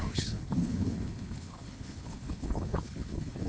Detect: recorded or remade remade